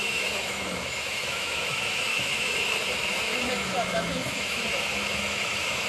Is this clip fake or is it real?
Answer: fake